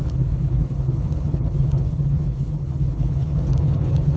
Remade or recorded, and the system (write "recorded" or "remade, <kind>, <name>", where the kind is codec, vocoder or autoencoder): remade, codec, HILCodec